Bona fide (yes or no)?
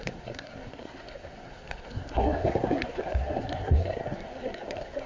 no